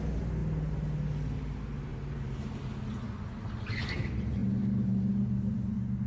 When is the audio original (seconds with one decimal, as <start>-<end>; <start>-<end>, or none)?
0.0-1.9; 2.6-6.1